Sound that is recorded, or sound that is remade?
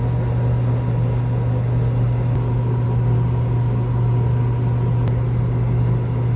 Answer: recorded